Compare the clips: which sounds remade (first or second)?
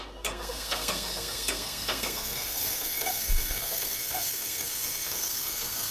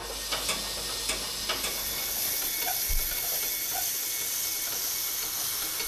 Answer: first